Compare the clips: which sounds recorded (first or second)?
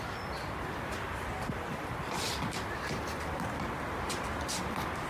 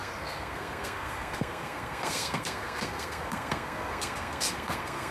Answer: first